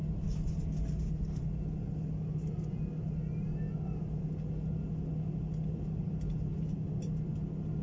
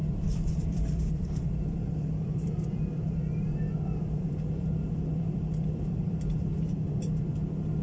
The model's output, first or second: second